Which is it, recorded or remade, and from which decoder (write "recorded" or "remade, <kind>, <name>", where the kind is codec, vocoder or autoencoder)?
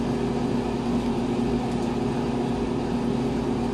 recorded